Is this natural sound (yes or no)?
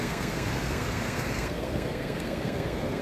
no